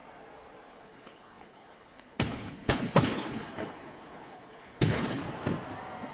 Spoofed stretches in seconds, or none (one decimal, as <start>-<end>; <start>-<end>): 0.7-5.2